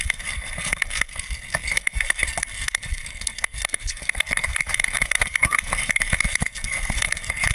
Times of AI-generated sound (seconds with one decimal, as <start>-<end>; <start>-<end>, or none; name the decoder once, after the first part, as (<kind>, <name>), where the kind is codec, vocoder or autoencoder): 0.0-7.5 (codec, SNAC)